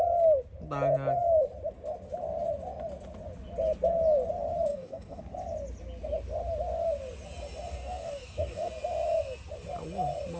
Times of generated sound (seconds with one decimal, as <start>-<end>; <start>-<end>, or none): 4.7-5.2; 7.7-8.7